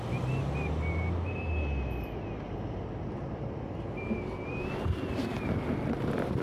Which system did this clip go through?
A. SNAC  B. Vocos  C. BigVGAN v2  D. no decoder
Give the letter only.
D